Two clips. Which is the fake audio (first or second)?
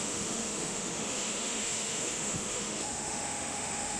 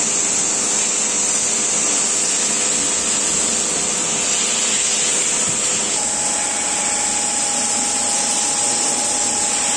first